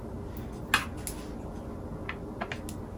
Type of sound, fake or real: real